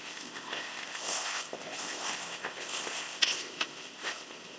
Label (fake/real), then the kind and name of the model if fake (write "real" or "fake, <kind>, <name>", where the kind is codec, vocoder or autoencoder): fake, codec, ZipCodec